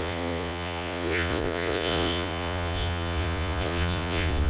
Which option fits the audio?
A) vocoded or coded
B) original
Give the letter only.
A